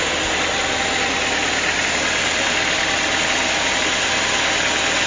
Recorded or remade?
recorded